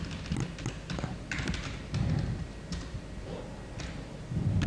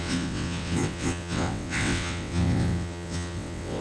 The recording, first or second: first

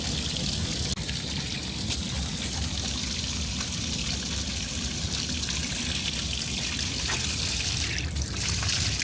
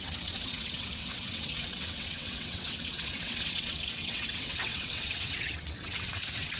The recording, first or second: first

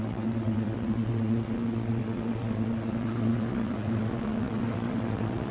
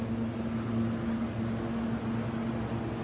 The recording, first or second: second